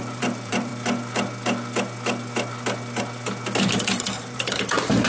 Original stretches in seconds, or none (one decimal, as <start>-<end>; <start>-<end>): 0.7-3.8